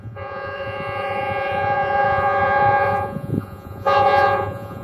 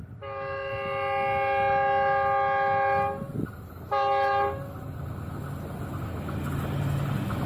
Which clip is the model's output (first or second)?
first